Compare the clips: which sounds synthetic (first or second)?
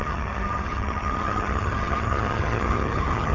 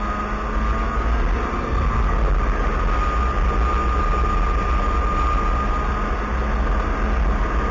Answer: first